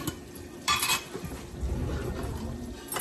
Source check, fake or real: real